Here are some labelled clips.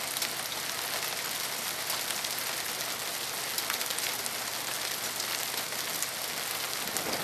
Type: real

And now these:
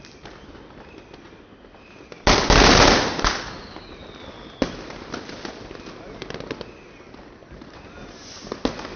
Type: real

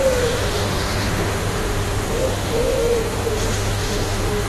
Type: fake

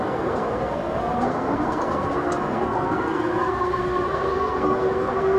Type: fake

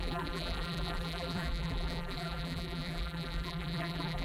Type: fake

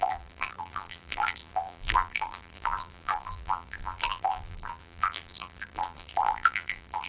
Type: fake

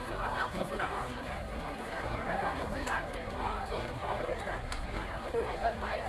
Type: fake